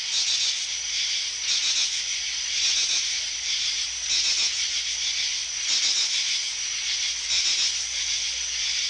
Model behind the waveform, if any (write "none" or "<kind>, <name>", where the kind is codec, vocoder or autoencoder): none